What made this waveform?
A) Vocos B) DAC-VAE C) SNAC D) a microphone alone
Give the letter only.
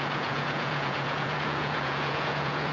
A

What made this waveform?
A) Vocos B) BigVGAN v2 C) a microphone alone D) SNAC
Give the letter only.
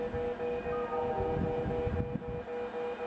C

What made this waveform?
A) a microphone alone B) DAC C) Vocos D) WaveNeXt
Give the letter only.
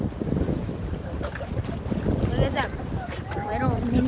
A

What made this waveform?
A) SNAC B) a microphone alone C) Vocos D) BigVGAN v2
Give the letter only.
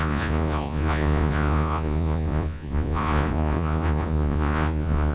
C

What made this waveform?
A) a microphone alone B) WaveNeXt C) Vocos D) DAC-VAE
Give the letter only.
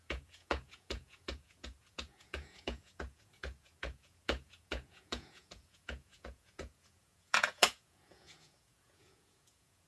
C